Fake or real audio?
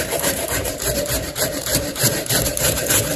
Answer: fake